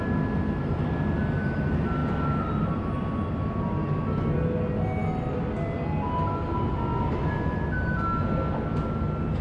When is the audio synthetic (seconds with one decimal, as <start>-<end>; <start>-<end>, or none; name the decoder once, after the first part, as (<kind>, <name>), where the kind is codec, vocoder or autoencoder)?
none